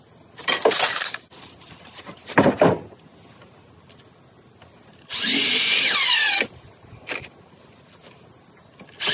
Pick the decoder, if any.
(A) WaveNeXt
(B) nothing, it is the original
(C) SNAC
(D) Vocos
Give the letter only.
B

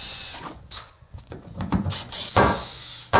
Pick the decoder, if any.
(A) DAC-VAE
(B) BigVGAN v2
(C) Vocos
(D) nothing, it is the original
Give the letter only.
C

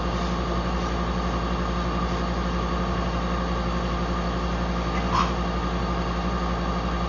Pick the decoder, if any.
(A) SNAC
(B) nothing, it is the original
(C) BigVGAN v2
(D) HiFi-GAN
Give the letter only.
B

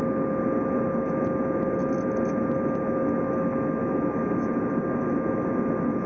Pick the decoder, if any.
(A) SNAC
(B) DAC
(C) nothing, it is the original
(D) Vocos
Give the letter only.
C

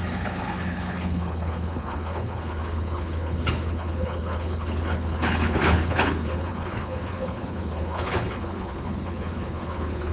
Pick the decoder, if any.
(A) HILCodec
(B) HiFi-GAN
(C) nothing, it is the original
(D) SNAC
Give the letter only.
A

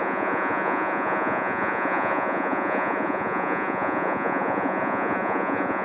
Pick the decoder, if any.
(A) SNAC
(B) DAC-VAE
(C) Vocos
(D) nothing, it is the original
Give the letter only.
C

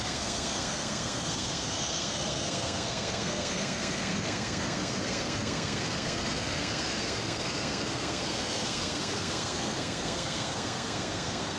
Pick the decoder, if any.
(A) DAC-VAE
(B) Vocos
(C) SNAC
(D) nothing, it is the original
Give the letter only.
C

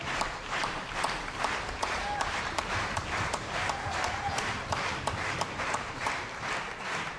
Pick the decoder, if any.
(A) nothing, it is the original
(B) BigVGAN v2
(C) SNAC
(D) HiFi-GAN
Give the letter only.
B